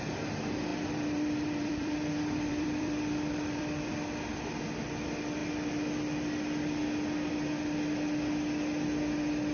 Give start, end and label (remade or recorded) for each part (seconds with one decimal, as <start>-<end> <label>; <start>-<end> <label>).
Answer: 0.0-0.7 recorded; 0.7-4.6 remade; 4.6-9.5 recorded